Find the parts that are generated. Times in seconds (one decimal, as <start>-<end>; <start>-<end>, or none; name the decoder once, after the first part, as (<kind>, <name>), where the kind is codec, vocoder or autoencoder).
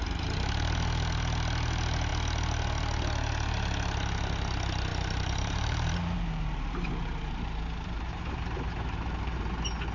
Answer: 4.9-9.4 (vocoder, BigVGAN v2)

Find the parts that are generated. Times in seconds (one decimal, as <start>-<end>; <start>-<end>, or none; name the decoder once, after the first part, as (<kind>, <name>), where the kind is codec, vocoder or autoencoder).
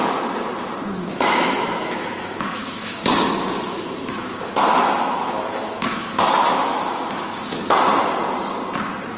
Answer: 1.1-3.0 (autoencoder, DAC-VAE); 3.6-7.6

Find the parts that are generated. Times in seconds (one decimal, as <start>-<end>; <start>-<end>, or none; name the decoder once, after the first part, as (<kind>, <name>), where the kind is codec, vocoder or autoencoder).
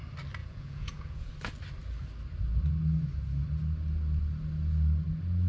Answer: 0.4-1.3 (vocoder, Vocos)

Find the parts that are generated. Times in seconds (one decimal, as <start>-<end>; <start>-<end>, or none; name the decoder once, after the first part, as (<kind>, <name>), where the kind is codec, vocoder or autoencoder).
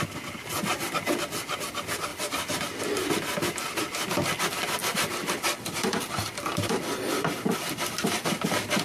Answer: 2.1-3.1 (vocoder, BigVGAN v2); 4.8-8.8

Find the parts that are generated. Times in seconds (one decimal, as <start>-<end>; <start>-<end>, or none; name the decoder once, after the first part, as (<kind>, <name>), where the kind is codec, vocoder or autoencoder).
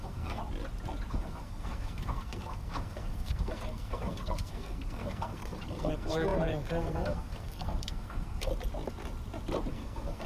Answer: 0.0-0.4 (codec, SNAC); 1.1-8.5; 9.7-10.3